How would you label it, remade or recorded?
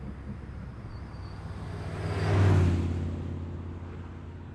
recorded